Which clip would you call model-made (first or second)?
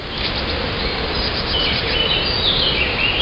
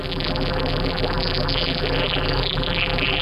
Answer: second